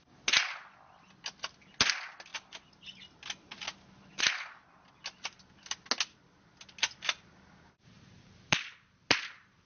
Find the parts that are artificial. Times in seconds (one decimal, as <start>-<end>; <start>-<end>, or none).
none